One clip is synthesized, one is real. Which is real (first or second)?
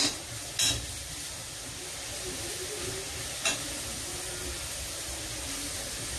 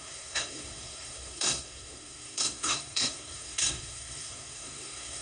first